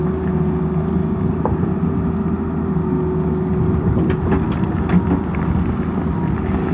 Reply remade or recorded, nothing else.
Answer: recorded